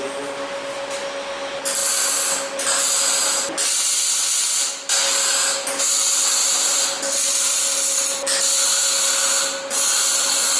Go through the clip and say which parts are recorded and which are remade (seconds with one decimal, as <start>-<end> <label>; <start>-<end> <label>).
0.0-6.4 recorded; 6.4-7.6 remade; 7.6-10.6 recorded